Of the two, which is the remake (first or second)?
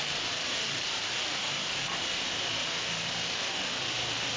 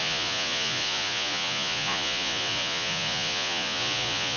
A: second